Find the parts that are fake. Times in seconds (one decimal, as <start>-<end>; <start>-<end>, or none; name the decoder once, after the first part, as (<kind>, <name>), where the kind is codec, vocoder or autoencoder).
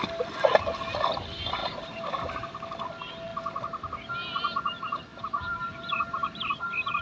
1.6-2.5 (vocoder, BigVGAN v2); 5.1-6.5